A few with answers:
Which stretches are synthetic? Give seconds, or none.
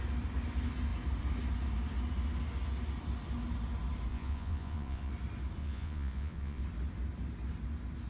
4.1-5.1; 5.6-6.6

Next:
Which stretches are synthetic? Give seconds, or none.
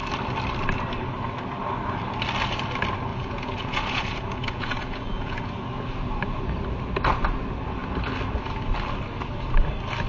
3.1-5.5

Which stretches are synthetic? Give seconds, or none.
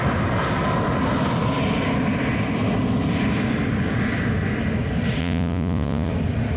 5.2-6.1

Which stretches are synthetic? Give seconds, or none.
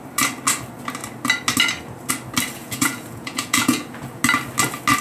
2.6-4.2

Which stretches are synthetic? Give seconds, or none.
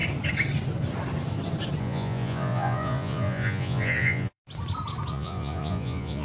1.8-4.4; 5.1-6.2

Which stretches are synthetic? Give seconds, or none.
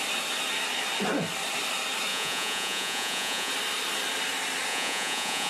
2.1-3.5; 4.7-5.5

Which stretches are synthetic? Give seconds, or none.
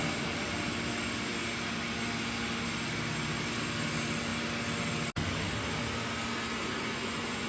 6.6-7.5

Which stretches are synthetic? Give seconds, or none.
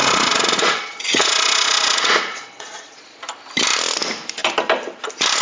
0.0-3.2